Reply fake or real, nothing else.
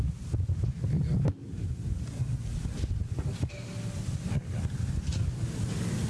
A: real